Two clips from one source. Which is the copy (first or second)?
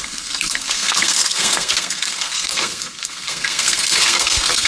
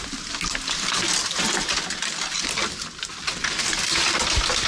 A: first